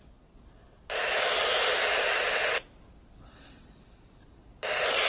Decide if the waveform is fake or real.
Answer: real